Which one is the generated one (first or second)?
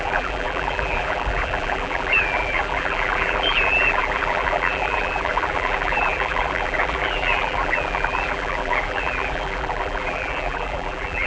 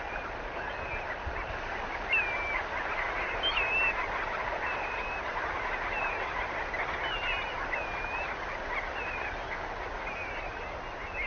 first